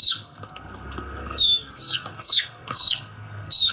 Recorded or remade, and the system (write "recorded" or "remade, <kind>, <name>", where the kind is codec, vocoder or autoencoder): remade, codec, SNAC